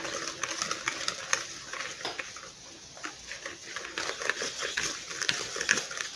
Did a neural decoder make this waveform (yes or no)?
no